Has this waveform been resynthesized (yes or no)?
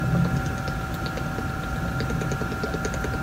no